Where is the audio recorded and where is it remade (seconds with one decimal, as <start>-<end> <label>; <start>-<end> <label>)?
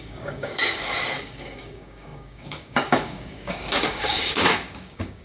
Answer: 0.0-5.2 remade